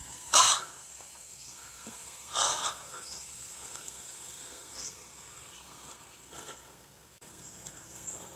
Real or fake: fake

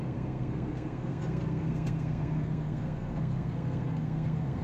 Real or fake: fake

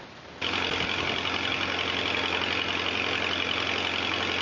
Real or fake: real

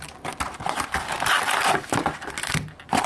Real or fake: real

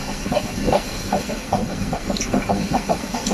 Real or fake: fake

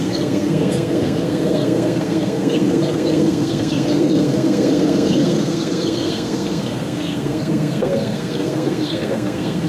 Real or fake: fake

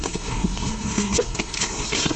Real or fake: fake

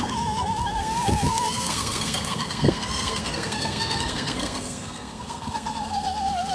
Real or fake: fake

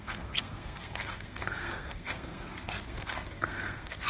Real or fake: fake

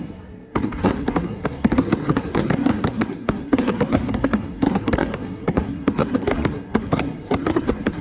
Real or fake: fake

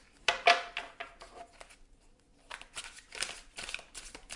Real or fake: real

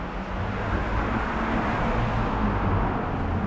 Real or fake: real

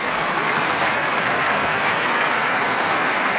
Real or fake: fake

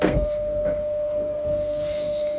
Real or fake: fake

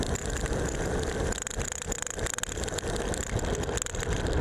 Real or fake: real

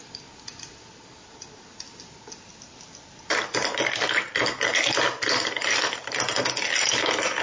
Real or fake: real